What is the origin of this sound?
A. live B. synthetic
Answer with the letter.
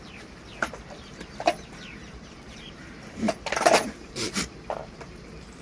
B